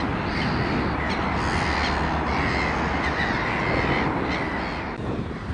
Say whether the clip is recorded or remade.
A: recorded